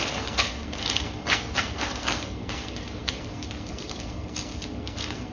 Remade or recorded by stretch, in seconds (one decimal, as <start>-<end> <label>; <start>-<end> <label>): 0.0-5.3 remade